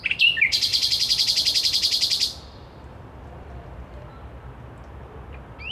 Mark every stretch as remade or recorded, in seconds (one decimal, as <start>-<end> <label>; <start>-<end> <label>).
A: 0.0-0.7 recorded; 0.7-4.1 remade; 4.1-5.7 recorded